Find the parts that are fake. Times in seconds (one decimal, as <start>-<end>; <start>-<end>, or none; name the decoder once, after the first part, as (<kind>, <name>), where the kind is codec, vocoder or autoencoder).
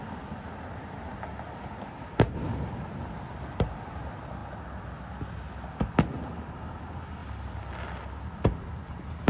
none